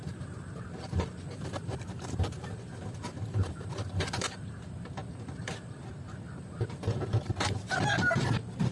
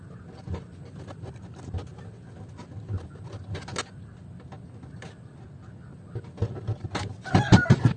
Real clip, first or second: second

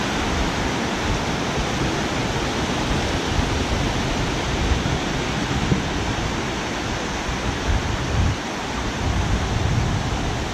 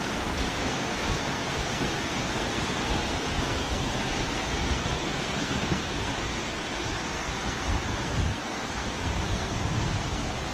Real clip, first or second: first